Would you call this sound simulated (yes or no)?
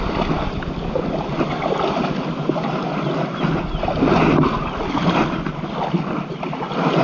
no